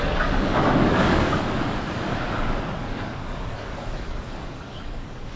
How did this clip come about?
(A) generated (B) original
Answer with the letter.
A